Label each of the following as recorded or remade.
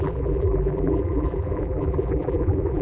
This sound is remade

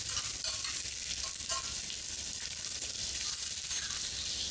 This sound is recorded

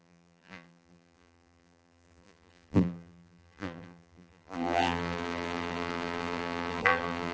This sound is remade